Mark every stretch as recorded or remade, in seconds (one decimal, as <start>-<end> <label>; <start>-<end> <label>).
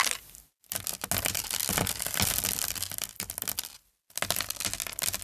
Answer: 0.0-5.2 recorded